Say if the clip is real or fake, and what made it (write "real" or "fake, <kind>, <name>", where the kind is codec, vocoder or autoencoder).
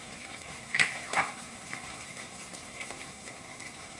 fake, codec, SNAC